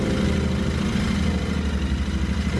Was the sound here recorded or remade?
recorded